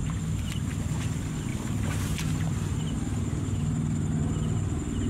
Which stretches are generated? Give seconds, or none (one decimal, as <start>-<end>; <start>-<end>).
0.0-0.8; 1.5-4.2